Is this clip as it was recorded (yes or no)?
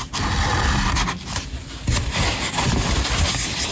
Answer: yes